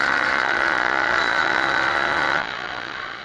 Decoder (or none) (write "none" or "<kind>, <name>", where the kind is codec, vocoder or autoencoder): vocoder, Vocos